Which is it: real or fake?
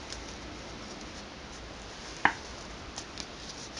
real